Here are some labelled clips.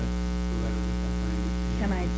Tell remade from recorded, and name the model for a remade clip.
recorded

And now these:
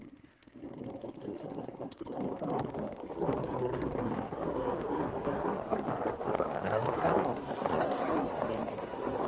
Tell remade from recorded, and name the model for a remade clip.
remade, codec, SNAC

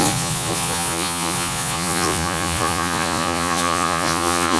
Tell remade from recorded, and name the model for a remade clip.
remade, vocoder, Vocos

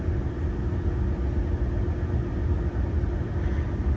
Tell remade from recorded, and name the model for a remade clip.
recorded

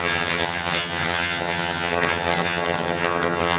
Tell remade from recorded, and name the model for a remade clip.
remade, vocoder, HiFi-GAN